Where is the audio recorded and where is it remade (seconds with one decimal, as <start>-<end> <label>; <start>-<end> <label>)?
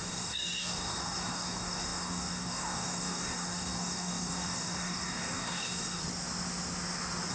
0.0-6.0 remade; 6.0-7.3 recorded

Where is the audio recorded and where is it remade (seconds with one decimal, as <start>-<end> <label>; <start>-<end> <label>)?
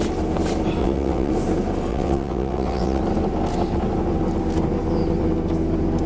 0.0-0.8 recorded; 0.8-1.3 remade; 1.3-1.9 recorded; 1.9-3.0 remade; 3.0-6.1 recorded